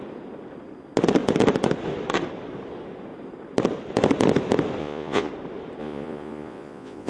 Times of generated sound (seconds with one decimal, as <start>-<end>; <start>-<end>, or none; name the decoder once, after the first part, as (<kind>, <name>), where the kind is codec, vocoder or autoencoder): 4.8-5.3 (vocoder, Vocos); 5.8-7.1